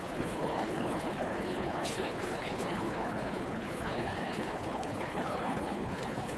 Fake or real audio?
fake